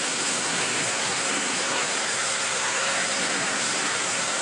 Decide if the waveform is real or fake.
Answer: fake